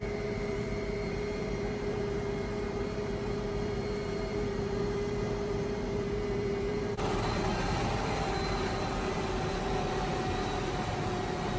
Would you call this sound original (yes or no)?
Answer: no